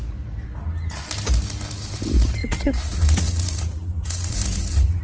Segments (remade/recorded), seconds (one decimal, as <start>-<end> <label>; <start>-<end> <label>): 0.0-2.4 recorded; 2.4-5.0 remade